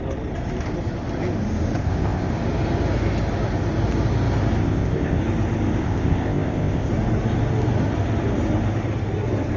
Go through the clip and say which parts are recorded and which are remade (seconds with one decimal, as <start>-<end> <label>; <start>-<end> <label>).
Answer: 0.0-1.8 recorded; 1.8-2.3 remade; 2.3-4.6 recorded; 4.6-5.2 remade; 5.2-5.8 recorded; 5.8-6.9 remade; 6.9-9.6 recorded